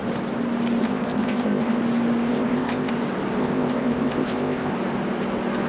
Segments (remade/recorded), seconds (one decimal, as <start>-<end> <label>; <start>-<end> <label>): 0.0-0.8 recorded; 0.8-1.8 remade; 1.8-2.3 recorded; 2.3-2.9 remade; 2.9-3.4 recorded; 3.4-4.7 remade; 4.7-5.7 recorded